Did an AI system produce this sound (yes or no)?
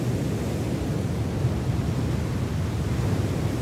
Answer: no